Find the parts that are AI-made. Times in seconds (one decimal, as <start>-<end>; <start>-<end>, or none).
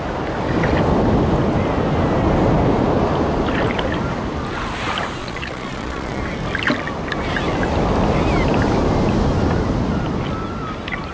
5.2-6.2